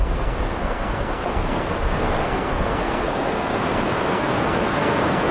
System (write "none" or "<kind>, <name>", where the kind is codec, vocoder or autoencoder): codec, SNAC